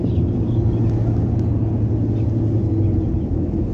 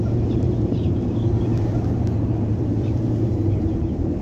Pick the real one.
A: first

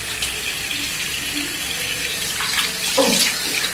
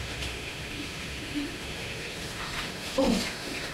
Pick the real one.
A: first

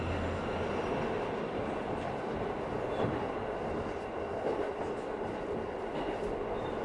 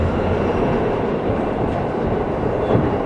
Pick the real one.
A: first